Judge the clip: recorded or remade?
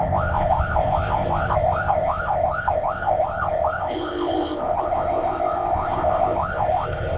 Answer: remade